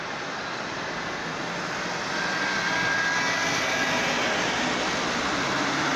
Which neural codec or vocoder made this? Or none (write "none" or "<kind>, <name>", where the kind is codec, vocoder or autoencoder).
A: none